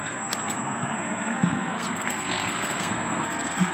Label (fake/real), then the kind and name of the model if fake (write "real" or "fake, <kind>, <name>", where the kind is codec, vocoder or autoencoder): fake, codec, SNAC